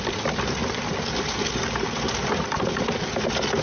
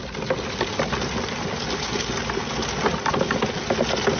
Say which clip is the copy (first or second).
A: first